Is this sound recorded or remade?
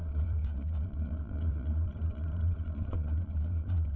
remade